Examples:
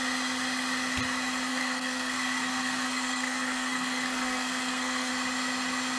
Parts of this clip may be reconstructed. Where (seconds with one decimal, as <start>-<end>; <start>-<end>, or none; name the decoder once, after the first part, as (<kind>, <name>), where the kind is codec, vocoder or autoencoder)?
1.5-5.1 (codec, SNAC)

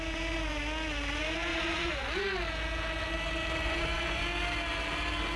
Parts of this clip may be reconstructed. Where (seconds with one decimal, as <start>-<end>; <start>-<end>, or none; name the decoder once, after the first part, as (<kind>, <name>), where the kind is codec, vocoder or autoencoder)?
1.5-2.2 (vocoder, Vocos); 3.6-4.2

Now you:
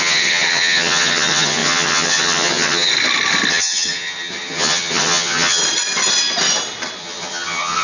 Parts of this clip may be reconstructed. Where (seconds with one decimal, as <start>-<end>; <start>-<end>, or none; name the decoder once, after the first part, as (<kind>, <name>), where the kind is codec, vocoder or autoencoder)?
0.0-2.9 (vocoder, HiFi-GAN); 3.5-5.6; 7.0-7.8

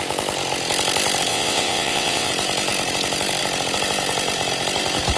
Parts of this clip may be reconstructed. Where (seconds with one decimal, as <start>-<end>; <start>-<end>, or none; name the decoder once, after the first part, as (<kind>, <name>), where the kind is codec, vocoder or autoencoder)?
1.3-2.3 (vocoder, WaveNeXt)

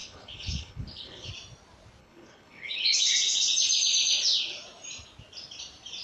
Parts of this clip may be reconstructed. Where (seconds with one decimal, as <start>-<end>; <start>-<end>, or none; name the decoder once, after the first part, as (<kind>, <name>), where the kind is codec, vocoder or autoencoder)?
0.0-1.3 (codec, HILCodec); 2.0-3.1

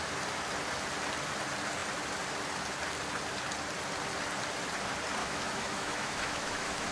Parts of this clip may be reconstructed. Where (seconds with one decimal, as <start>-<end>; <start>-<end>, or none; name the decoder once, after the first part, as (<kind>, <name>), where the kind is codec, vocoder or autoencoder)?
5.2-6.9 (autoencoder, DAC-VAE)

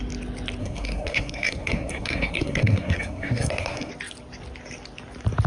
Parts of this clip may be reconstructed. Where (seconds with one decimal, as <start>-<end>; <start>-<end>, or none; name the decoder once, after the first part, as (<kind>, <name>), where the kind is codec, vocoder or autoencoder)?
0.6-3.9 (codec, SNAC)

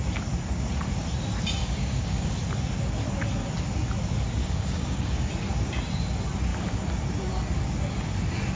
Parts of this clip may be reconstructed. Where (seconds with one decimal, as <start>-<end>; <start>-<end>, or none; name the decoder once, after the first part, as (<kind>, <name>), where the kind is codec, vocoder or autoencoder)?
1.6-2.3 (codec, DAC); 4.4-5.3